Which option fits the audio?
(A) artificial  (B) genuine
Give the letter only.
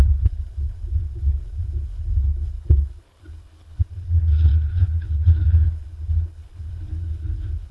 A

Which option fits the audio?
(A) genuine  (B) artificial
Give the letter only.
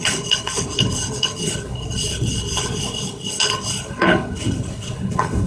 B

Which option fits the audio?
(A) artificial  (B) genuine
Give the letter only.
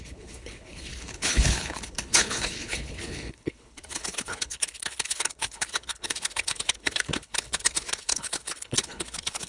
A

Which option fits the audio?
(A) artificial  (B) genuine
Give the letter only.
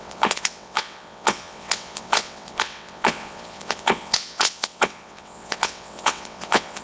A